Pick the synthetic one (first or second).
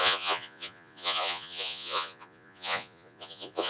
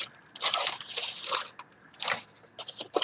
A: first